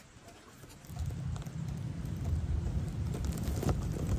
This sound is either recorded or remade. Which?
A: recorded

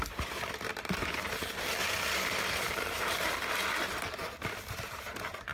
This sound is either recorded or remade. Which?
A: remade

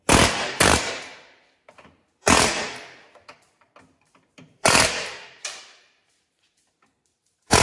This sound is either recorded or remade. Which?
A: remade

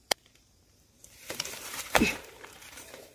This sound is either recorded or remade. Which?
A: remade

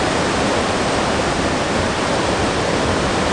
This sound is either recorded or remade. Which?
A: remade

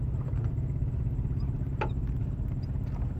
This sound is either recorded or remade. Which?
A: recorded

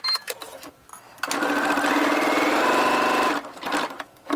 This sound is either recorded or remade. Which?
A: recorded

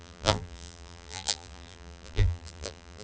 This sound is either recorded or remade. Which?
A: remade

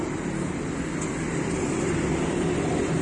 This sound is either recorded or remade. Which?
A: recorded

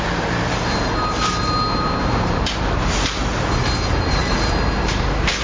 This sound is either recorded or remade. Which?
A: remade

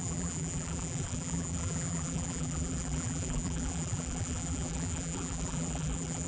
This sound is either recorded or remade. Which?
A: remade